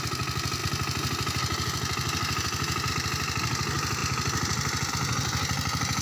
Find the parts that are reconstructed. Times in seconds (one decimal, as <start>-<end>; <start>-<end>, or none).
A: none